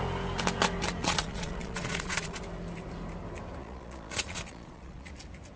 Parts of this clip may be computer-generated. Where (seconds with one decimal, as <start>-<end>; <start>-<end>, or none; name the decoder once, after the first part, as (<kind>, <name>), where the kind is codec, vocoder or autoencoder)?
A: 1.0-2.4 (vocoder, Vocos); 3.6-5.1